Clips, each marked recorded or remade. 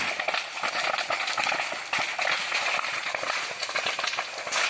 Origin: recorded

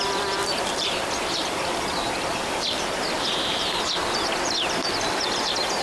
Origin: remade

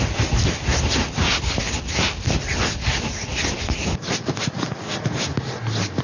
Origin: recorded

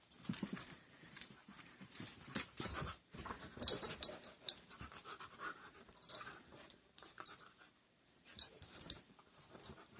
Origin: remade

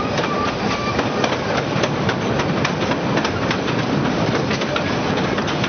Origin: remade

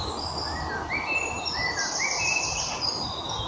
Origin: recorded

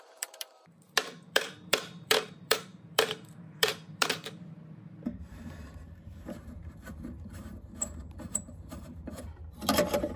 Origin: remade